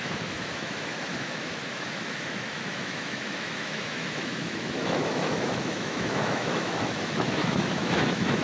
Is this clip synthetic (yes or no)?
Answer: yes